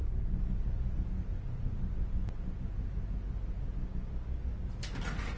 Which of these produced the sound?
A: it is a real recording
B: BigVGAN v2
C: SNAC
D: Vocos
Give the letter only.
A